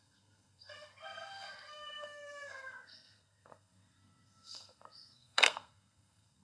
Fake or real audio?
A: fake